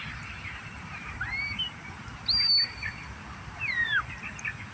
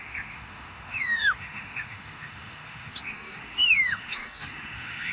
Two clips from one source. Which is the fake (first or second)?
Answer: second